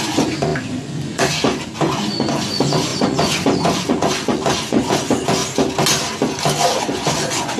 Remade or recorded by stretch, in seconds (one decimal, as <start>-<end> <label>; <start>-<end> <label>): 0.0-5.4 remade; 5.4-6.8 recorded; 6.8-7.6 remade